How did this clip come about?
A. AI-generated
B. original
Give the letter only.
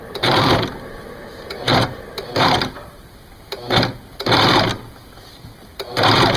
B